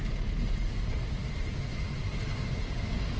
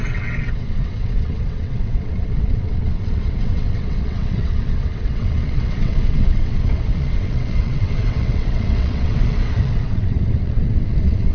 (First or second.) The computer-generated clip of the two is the second